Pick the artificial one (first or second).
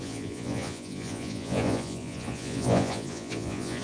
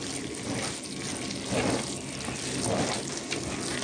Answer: first